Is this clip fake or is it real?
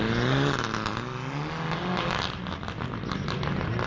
real